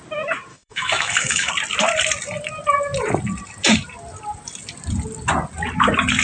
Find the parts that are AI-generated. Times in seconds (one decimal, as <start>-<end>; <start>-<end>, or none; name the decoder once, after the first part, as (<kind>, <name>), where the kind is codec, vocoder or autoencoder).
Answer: 0.5-1.5 (autoencoder, DAC-VAE)